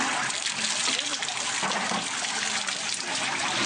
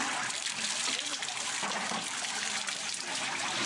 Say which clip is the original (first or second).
first